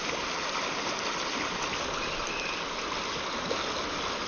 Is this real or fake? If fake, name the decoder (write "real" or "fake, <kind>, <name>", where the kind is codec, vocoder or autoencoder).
real